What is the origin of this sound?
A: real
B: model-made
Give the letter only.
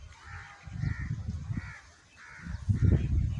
A